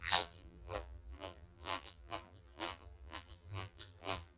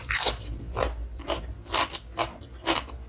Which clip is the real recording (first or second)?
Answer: second